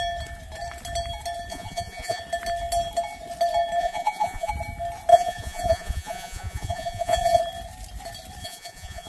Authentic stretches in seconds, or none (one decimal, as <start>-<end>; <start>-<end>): 0.0-1.5; 2.2-3.8; 4.5-5.1; 7.4-8.4